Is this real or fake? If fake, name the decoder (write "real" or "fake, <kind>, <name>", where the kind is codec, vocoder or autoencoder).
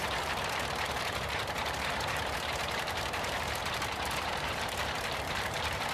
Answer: fake, vocoder, BigVGAN v2